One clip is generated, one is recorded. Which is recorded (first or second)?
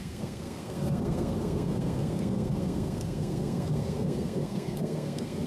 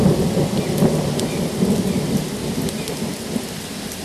second